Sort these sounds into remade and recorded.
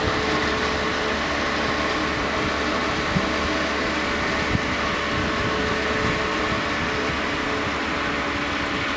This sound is recorded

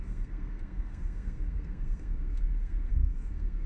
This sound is remade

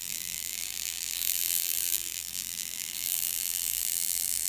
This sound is remade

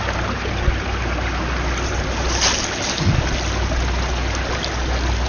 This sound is recorded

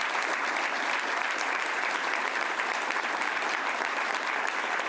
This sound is remade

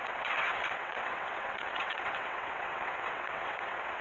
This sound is remade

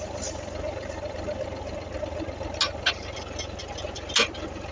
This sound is recorded